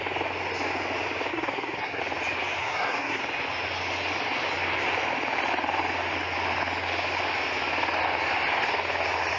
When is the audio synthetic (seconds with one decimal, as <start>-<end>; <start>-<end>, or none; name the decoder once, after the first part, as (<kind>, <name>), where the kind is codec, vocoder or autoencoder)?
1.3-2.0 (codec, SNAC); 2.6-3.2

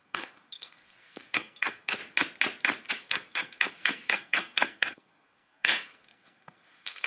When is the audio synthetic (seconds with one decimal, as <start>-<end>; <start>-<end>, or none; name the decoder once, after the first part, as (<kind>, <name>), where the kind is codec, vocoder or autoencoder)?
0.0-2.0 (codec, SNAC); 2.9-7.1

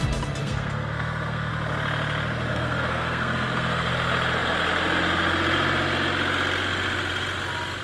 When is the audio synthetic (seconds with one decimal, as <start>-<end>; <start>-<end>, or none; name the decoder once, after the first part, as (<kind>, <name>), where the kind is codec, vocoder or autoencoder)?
0.4-1.5 (codec, SNAC); 2.5-3.9